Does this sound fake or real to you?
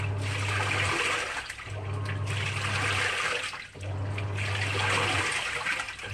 real